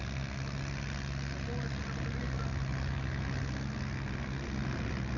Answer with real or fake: real